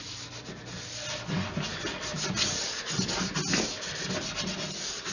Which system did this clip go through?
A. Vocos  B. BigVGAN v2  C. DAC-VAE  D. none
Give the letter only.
D